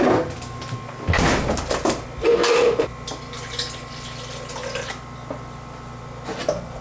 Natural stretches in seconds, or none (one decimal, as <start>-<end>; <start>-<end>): 0.0-6.8